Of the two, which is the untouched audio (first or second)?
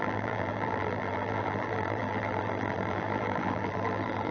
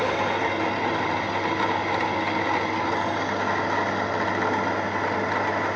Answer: second